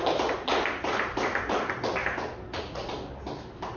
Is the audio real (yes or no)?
yes